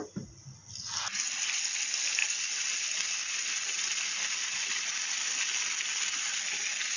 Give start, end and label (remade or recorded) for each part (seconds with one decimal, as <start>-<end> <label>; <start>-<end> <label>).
0.0-7.0 recorded